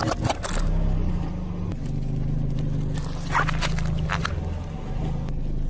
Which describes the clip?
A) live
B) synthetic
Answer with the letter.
A